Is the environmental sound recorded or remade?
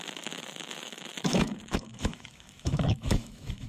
remade